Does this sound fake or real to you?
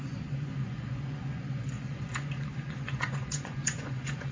fake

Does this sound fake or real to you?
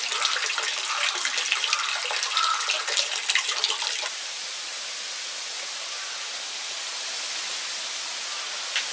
real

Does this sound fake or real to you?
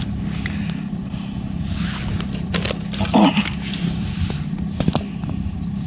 real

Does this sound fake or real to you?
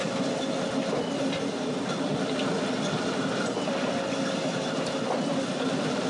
real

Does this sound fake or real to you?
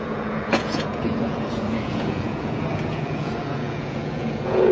fake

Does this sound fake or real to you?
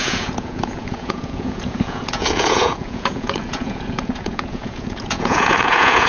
fake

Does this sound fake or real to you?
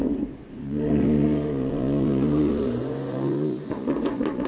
fake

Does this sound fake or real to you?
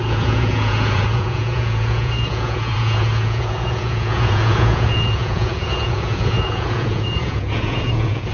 fake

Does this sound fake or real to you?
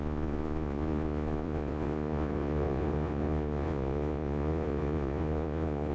fake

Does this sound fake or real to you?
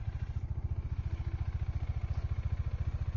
real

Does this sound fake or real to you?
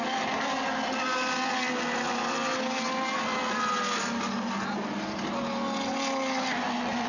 real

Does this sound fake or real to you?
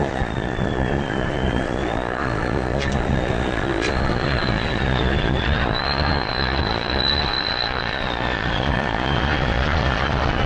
fake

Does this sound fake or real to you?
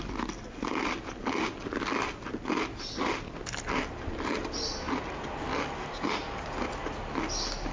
real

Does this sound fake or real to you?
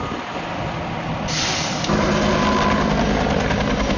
real